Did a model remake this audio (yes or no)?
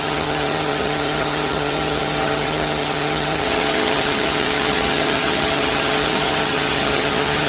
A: yes